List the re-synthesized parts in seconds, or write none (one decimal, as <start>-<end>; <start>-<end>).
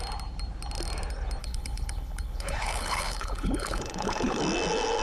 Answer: 1.4-4.4